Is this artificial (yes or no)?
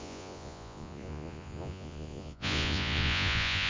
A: yes